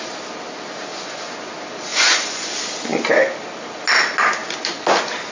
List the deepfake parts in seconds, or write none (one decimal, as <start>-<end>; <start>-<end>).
0.9-1.5; 1.9-2.5